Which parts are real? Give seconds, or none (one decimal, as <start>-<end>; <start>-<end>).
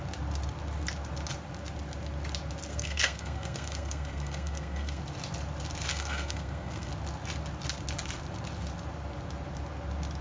0.0-2.7; 5.0-5.9; 6.9-10.2